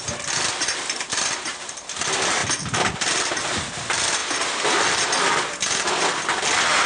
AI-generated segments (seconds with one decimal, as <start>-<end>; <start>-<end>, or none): none